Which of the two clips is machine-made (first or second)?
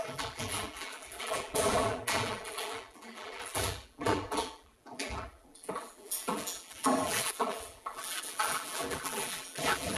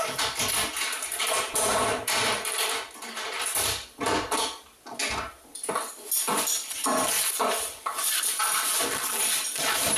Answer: first